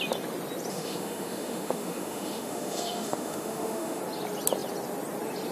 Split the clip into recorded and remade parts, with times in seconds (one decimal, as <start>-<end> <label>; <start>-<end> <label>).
0.0-0.7 recorded; 0.7-4.0 remade; 4.0-5.5 recorded